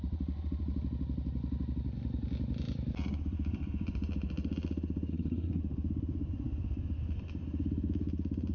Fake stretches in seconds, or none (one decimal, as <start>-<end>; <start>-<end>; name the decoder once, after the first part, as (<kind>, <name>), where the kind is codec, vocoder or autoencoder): 5.1-5.6 (codec, SNAC)